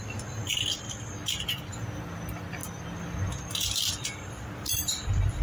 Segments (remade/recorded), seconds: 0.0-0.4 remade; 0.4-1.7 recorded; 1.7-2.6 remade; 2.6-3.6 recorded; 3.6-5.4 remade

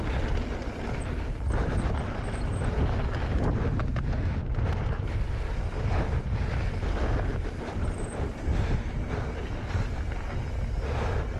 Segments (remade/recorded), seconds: 0.0-7.3 recorded; 7.3-10.2 remade; 10.2-11.4 recorded

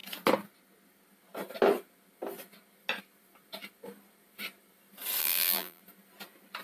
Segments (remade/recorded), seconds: 0.0-5.2 recorded; 5.2-5.8 remade; 5.8-6.6 recorded

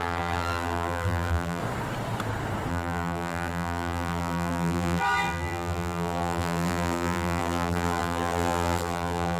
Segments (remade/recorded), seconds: 0.0-1.6 remade; 1.6-2.7 recorded; 2.7-9.4 remade

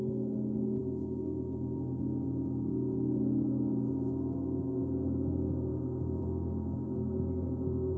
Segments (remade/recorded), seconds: 0.0-8.0 recorded

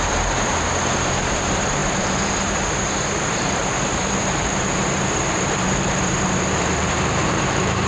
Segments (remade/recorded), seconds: 0.0-7.9 remade

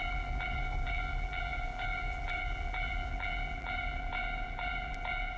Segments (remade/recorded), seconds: 0.0-5.4 remade